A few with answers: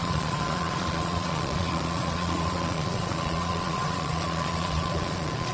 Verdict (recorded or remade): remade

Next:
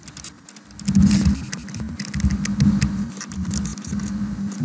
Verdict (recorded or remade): recorded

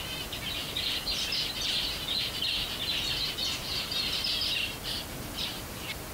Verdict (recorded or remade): recorded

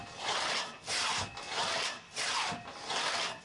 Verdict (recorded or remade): recorded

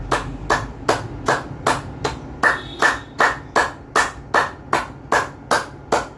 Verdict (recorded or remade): recorded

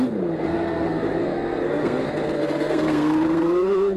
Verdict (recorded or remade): remade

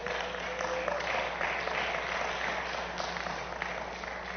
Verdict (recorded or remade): recorded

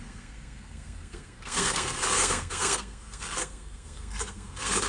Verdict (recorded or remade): remade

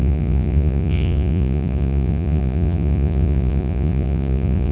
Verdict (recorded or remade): remade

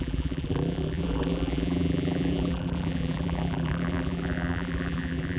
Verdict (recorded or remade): remade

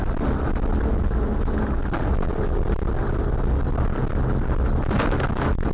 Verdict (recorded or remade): recorded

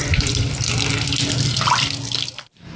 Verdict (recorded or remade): recorded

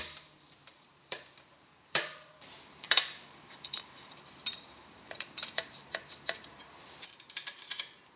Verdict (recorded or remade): remade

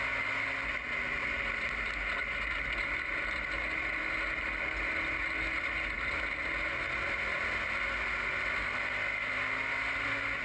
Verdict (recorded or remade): recorded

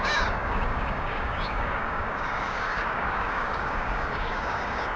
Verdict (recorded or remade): remade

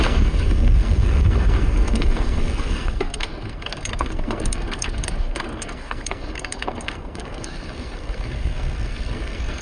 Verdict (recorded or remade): remade